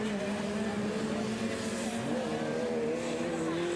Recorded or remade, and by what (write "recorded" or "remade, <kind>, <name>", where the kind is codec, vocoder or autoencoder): recorded